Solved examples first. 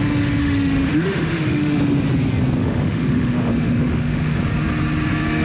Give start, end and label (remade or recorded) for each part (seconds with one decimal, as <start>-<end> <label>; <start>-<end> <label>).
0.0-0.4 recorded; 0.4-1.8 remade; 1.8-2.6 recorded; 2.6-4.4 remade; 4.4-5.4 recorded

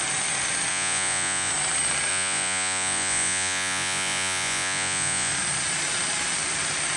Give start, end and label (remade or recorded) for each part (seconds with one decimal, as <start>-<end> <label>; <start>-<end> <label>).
0.0-0.7 recorded; 0.7-1.5 remade; 1.5-2.1 recorded; 2.1-5.3 remade; 5.3-7.0 recorded

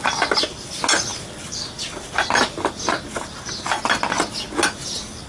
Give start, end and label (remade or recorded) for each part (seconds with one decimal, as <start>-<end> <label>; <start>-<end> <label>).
0.0-5.3 recorded

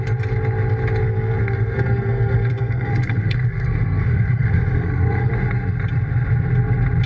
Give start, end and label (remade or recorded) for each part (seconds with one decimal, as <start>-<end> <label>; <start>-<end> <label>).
0.0-1.0 recorded; 1.0-5.3 remade; 5.3-7.1 recorded